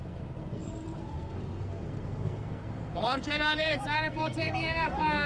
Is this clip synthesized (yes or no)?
yes